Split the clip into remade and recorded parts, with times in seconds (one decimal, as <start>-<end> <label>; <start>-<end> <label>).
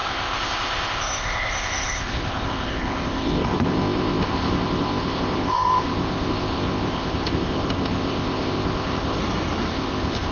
0.0-9.2 remade; 9.2-9.7 recorded; 9.7-10.3 remade